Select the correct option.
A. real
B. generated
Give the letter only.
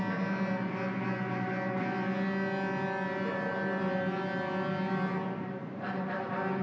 A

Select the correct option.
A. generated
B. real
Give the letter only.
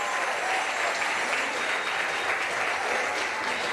B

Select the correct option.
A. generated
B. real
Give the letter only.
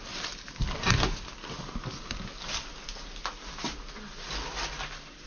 B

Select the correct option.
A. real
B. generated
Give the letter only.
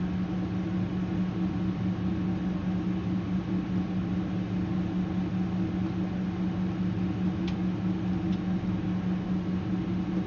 A